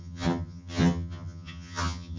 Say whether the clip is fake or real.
fake